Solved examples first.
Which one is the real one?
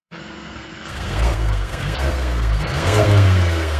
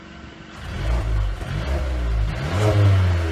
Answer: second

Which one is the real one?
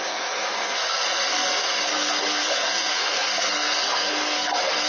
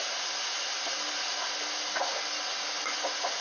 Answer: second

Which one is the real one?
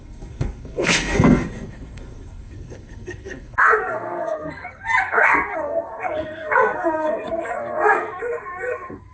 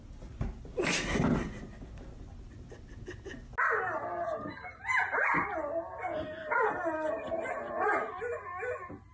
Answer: second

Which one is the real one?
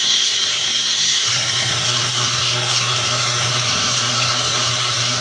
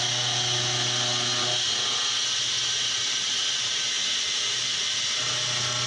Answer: second